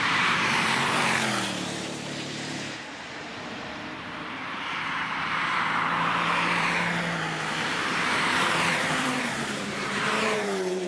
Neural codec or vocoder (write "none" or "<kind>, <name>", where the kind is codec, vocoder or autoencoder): vocoder, BigVGAN v2